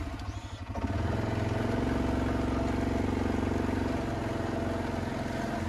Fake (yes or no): no